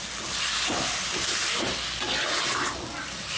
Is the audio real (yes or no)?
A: yes